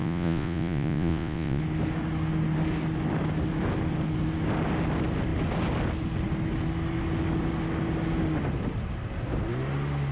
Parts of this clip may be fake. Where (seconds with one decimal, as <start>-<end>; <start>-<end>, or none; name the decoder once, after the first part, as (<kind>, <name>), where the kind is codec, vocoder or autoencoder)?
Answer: 0.0-1.6 (vocoder, Vocos)